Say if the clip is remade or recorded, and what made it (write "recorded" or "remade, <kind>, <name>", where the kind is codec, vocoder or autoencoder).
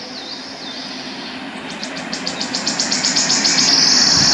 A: recorded